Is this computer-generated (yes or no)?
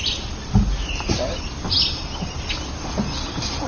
no